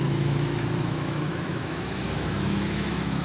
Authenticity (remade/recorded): remade